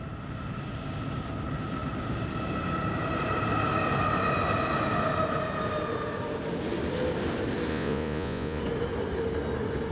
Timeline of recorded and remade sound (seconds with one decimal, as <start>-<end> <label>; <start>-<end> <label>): 0.0-7.7 recorded; 7.7-8.6 remade; 8.6-9.9 recorded